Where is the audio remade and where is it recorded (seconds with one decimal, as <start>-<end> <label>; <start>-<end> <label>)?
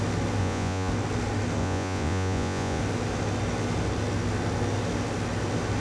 0.0-0.4 recorded; 0.4-0.9 remade; 0.9-1.6 recorded; 1.6-2.8 remade; 2.8-5.8 recorded